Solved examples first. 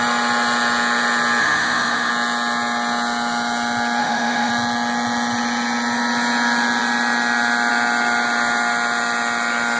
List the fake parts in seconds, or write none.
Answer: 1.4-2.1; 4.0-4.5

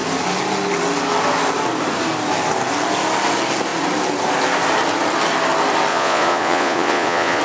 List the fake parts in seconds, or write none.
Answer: 5.9-7.4

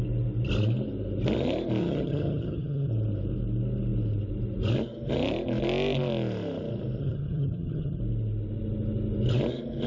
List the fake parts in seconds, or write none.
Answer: 1.8-2.9; 7.0-8.0

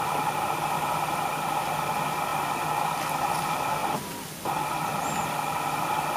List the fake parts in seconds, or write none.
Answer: none

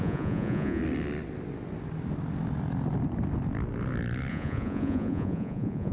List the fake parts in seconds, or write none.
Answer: 0.0-0.8; 4.3-5.9

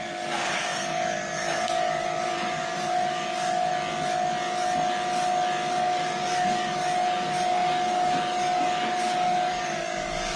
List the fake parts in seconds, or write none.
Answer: 0.0-3.7; 5.7-10.4

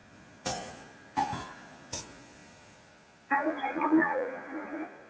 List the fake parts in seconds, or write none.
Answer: 0.0-5.1

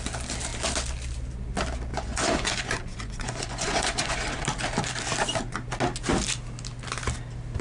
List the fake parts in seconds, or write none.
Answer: 1.9-4.4